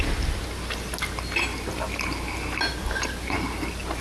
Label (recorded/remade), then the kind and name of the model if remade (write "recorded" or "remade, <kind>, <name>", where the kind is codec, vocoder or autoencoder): recorded